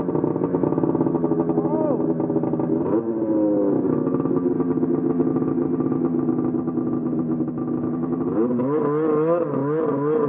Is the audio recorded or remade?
recorded